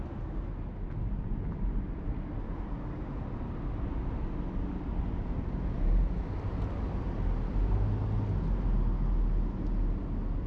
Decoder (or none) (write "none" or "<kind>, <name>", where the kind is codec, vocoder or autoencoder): none